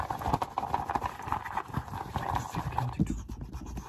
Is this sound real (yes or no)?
yes